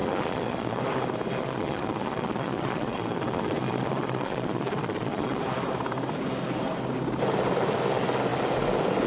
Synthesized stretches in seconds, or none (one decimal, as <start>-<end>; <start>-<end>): 0.0-0.8; 1.4-5.4